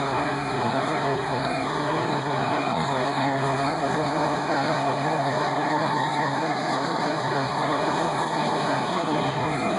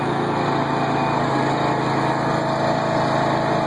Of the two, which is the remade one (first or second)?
first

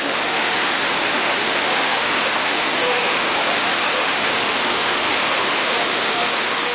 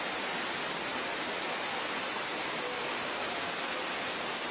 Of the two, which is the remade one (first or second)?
first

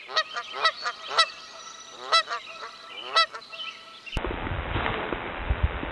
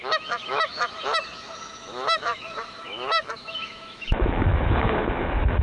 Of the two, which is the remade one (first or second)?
second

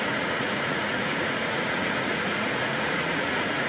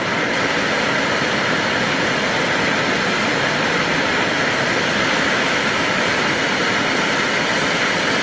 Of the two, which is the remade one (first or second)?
first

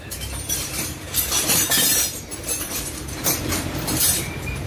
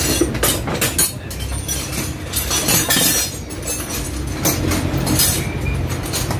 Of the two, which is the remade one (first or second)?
first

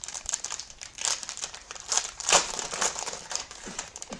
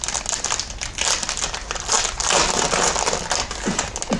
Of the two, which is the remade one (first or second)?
first